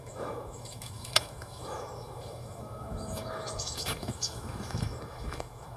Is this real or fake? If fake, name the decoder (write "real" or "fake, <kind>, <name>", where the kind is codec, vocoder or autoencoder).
fake, autoencoder, DAC-VAE